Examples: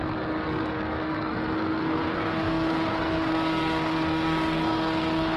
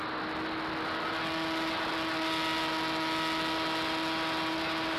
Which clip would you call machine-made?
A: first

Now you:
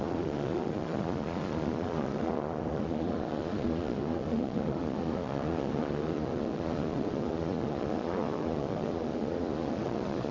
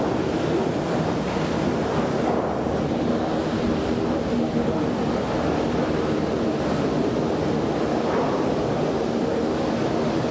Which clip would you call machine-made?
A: first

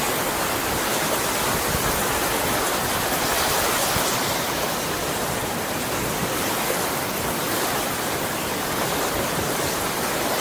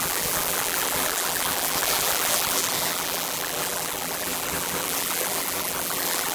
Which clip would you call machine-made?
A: second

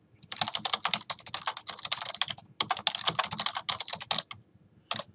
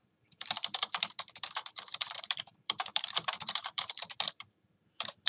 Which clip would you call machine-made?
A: second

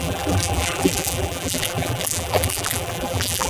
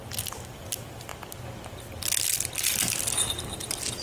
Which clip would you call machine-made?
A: first